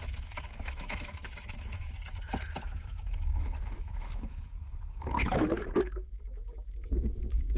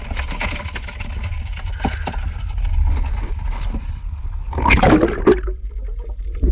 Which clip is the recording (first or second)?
second